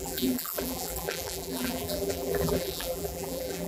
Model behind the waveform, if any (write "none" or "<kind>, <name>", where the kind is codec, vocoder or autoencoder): vocoder, BigVGAN v2